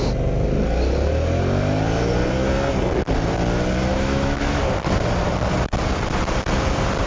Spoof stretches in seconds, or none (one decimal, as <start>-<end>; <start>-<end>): 3.9-4.6